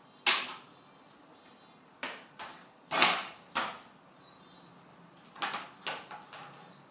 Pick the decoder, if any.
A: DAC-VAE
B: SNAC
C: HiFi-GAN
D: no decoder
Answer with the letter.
D